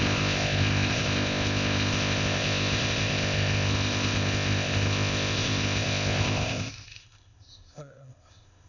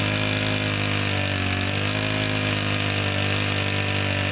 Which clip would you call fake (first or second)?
first